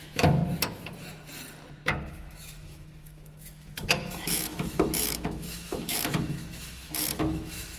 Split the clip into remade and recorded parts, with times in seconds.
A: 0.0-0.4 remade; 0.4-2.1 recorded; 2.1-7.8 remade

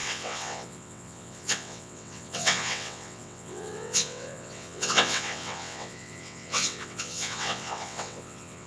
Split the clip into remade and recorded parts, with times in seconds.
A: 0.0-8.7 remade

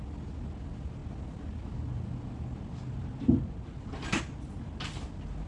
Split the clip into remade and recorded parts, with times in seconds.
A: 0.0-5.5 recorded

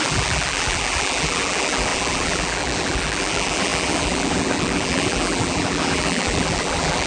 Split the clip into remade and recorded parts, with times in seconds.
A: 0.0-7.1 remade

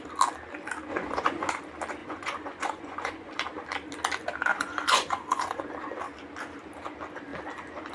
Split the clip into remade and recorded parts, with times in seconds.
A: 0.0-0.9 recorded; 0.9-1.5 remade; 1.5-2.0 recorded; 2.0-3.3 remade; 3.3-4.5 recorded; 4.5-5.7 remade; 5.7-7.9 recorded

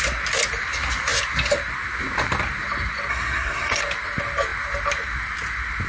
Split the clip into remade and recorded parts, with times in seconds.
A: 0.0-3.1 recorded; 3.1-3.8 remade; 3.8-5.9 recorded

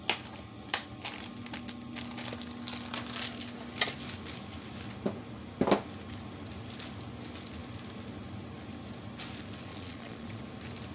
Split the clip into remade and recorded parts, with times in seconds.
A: 0.0-9.7 recorded; 9.7-10.4 remade; 10.4-10.9 recorded